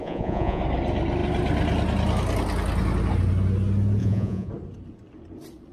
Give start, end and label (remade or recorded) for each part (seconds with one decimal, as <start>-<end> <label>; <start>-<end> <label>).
0.0-0.6 remade; 0.6-4.0 recorded; 4.0-4.5 remade; 4.5-5.7 recorded